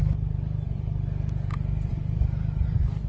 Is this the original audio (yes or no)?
yes